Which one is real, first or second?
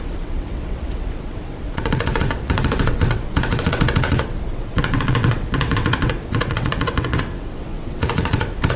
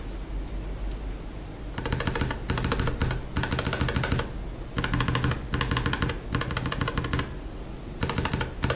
second